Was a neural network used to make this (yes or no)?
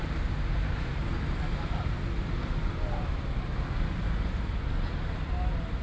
no